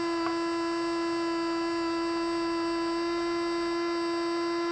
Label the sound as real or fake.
real